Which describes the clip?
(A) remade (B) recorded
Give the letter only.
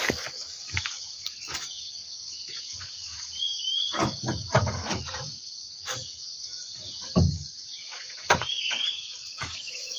A